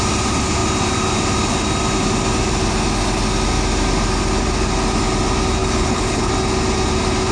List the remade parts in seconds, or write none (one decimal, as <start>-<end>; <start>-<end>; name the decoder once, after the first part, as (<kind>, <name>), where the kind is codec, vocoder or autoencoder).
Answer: 5.6-6.3 (codec, HILCodec)